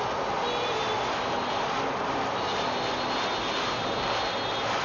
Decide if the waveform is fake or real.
real